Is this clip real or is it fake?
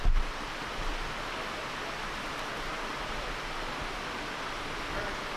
fake